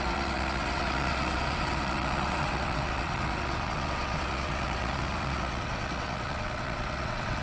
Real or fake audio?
fake